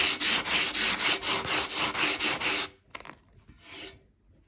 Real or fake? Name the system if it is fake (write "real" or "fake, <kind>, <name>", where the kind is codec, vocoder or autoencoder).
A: real